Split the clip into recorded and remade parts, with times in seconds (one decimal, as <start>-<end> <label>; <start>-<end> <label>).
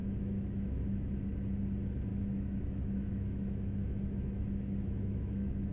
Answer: 0.0-1.1 remade; 1.1-2.1 recorded; 2.1-5.7 remade